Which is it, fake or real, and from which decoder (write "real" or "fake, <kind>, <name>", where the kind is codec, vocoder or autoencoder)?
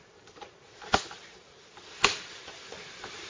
real